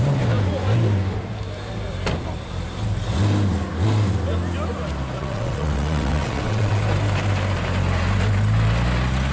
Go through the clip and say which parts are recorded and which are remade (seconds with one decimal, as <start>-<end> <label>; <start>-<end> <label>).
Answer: 0.0-5.2 recorded; 5.2-6.8 remade; 6.8-9.3 recorded